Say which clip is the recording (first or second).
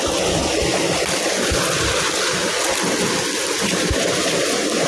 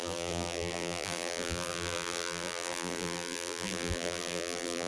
first